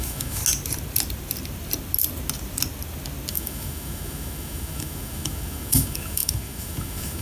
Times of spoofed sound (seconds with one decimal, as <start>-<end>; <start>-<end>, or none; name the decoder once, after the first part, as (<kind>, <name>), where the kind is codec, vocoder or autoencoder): 0.0-0.4 (autoencoder, DAC-VAE); 3.3-7.2